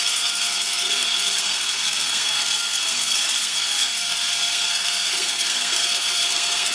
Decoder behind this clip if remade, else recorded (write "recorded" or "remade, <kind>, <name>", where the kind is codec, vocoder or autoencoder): remade, codec, SNAC